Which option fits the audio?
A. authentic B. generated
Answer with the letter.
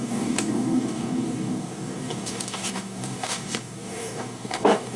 B